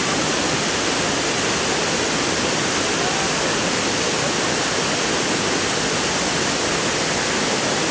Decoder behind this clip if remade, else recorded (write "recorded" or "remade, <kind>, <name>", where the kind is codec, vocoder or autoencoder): recorded